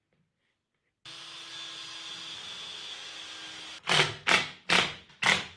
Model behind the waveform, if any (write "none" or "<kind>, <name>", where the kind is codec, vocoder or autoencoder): none